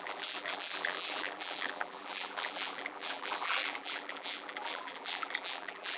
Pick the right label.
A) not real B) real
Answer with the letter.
A